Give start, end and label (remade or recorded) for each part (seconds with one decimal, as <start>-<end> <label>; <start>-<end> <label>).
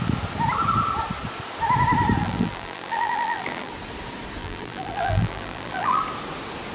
0.0-2.2 recorded; 2.2-3.7 remade; 3.7-4.4 recorded; 4.4-6.0 remade; 6.0-6.7 recorded